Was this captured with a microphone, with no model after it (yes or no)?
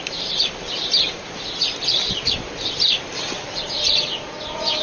yes